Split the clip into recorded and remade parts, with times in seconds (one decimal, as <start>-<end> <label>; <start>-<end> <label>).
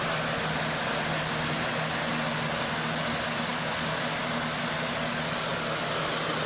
0.0-6.5 recorded